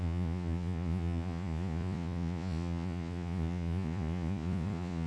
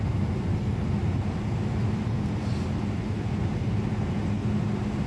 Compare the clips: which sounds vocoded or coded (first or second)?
first